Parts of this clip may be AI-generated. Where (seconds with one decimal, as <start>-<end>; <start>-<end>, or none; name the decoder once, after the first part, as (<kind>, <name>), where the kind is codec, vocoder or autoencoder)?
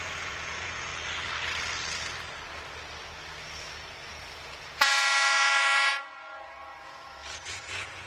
0.0-0.9 (vocoder, Vocos); 4.1-8.1